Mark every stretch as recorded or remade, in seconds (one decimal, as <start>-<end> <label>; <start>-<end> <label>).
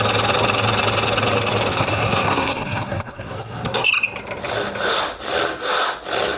0.0-1.7 recorded; 1.7-3.9 remade; 3.9-6.4 recorded